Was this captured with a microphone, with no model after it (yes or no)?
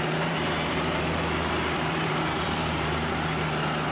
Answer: no